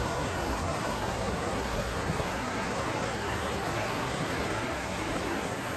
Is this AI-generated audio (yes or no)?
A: yes